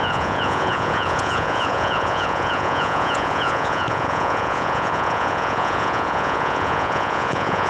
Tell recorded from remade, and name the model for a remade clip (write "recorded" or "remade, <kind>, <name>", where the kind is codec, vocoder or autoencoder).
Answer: remade, vocoder, Vocos